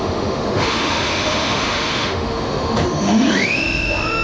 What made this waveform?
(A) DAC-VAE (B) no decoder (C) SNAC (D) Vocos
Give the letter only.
A